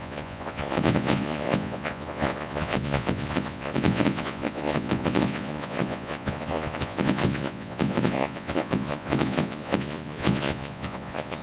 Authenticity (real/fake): fake